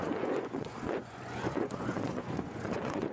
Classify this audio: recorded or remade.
remade